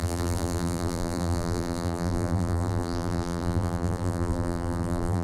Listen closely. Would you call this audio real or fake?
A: fake